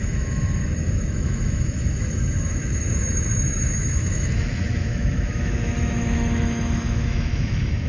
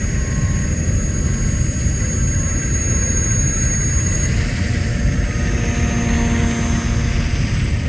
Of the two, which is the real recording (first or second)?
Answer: second